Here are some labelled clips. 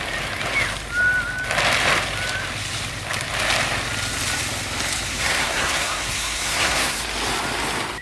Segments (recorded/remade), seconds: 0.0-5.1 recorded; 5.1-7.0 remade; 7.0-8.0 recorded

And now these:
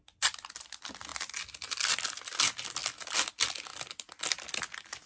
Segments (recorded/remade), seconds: 0.0-5.1 recorded

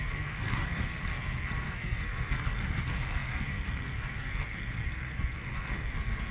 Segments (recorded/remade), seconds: 0.0-6.3 remade

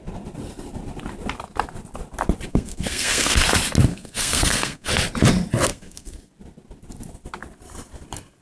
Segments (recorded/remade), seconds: 0.0-2.5 recorded; 2.5-3.4 remade; 3.4-3.9 recorded; 3.9-4.9 remade; 4.9-5.7 recorded; 5.7-6.3 remade; 6.3-8.4 recorded

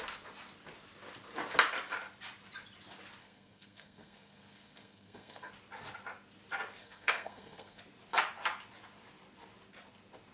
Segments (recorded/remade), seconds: 0.0-3.2 recorded; 3.2-5.5 remade; 5.5-6.8 recorded; 6.8-7.8 remade; 7.8-10.3 recorded